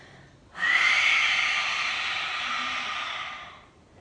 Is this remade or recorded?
recorded